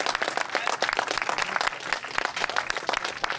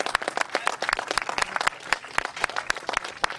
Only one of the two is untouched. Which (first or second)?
first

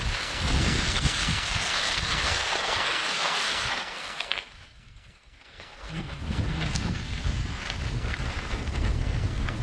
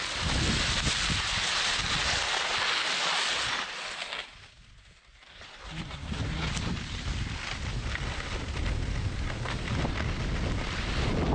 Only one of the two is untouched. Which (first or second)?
second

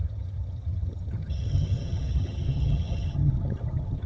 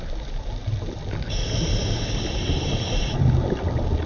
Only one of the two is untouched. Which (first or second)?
second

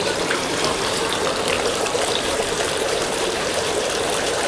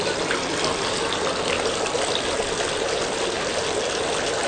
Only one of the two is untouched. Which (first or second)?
second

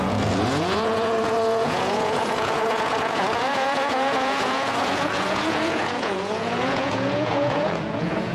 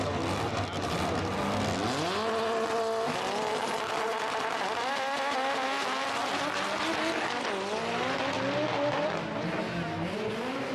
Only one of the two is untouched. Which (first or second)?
second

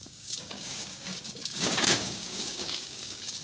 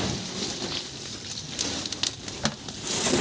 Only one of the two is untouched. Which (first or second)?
second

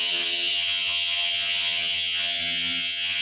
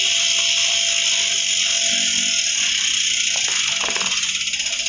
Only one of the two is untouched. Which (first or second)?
second